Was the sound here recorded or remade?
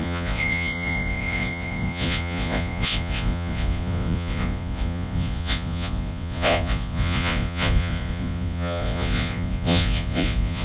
remade